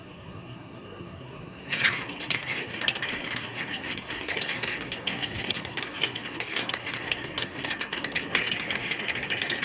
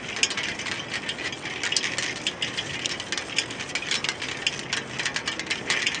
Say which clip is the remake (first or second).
first